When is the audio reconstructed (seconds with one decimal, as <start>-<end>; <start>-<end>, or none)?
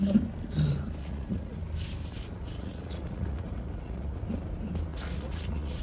1.0-1.6; 2.1-4.2; 4.9-5.8